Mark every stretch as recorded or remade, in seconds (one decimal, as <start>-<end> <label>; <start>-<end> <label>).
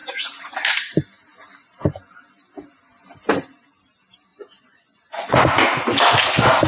0.0-4.3 recorded; 4.3-5.4 remade; 5.4-6.7 recorded